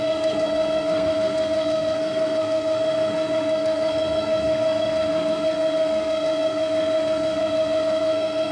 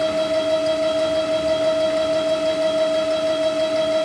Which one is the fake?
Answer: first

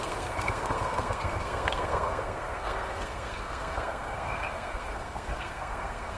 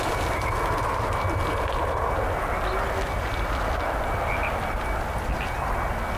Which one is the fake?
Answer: first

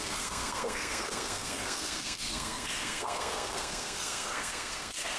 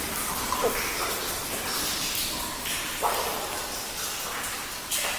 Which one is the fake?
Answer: first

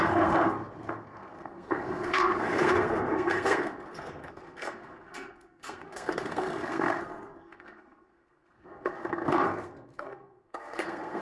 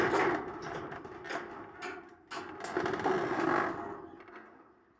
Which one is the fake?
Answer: first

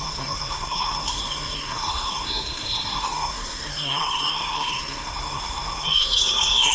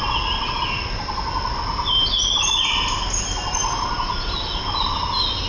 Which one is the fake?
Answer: first